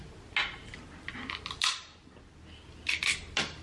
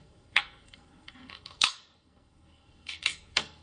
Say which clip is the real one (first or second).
first